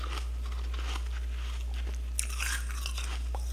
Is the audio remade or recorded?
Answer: recorded